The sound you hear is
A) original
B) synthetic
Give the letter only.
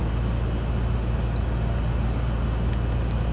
A